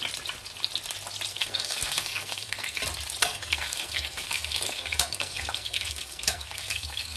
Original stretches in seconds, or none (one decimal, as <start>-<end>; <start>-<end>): 0.0-1.3; 2.8-3.2